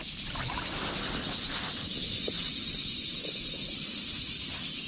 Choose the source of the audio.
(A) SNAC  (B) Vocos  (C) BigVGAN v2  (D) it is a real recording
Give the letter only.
D